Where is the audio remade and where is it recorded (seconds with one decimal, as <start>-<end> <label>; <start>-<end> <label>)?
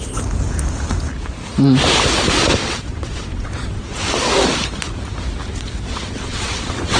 0.0-2.6 recorded; 2.6-4.1 remade; 4.1-5.5 recorded; 5.5-7.0 remade